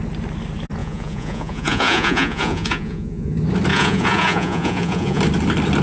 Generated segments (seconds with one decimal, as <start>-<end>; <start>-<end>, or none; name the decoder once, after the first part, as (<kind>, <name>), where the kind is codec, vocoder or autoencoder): 0.8-3.3 (vocoder, Vocos); 3.7-5.2